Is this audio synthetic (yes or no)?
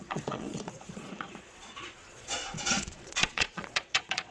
yes